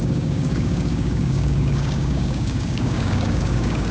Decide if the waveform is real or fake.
fake